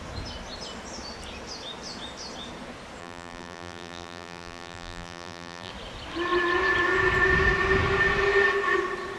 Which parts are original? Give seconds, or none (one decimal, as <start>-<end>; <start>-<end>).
0.0-3.0; 5.7-9.2